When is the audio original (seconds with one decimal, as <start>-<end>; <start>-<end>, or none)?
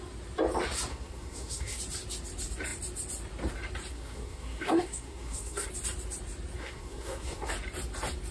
0.0-0.9; 1.8-3.9; 5.7-6.6; 7.5-8.3